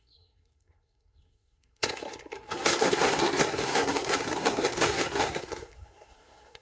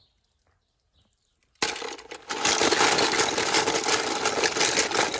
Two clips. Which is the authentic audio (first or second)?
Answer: second